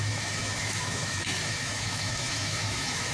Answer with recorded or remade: remade